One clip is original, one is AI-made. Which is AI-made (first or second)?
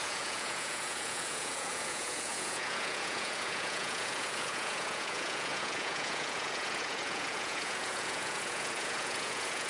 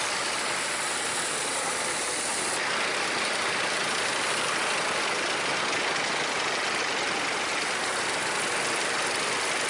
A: first